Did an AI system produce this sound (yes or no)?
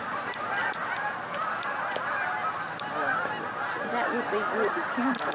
no